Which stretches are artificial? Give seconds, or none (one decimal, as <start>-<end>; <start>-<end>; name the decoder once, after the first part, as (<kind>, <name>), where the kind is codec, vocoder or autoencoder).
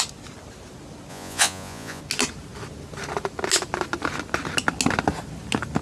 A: 1.1-2.0 (vocoder, Vocos)